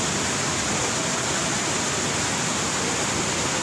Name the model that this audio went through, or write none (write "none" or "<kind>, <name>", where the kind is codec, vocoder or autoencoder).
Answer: none